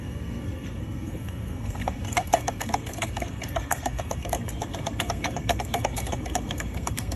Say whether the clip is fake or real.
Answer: fake